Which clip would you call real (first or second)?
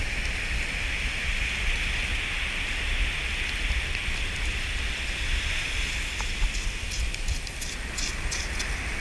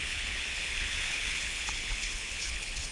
first